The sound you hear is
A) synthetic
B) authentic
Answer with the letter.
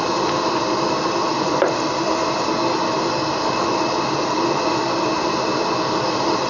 B